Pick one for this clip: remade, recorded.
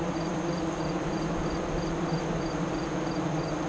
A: recorded